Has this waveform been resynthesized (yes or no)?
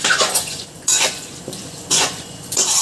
yes